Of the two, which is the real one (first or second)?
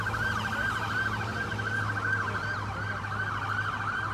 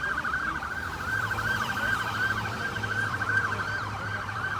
first